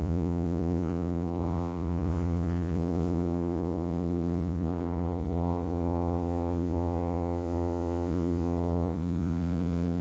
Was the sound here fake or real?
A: fake